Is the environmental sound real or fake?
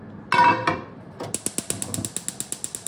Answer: real